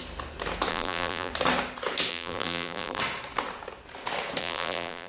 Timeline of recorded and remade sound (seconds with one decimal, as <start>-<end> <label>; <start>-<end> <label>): 0.0-0.7 recorded; 0.7-1.3 remade; 1.3-2.1 recorded; 2.1-3.0 remade; 3.0-4.4 recorded; 4.4-5.1 remade